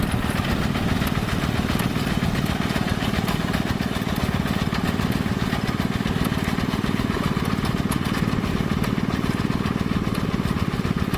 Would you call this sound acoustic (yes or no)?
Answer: yes